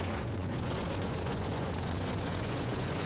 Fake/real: fake